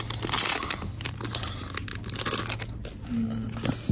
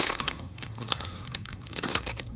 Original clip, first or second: first